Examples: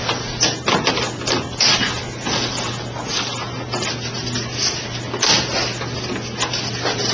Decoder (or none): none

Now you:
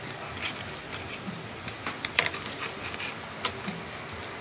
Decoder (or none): none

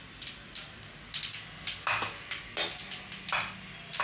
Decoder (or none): none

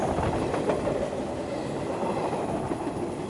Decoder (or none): none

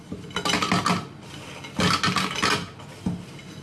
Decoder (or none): none